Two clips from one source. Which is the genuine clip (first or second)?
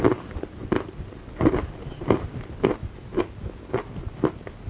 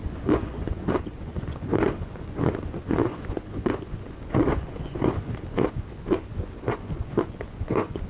first